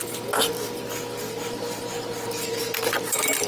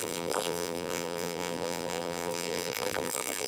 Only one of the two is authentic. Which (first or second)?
first